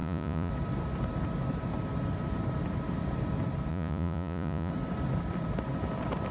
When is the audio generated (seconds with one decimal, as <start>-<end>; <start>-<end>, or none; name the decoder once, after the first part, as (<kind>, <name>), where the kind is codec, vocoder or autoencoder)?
0.0-0.5 (vocoder, Vocos); 3.7-4.7